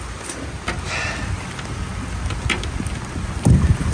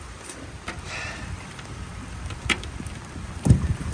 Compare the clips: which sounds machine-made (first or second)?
second